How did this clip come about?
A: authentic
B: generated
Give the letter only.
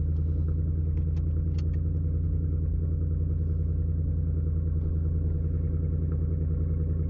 A